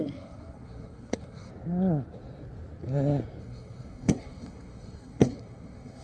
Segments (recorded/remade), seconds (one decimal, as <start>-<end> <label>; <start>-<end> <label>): 0.0-1.5 remade; 1.5-3.4 recorded; 3.4-6.0 remade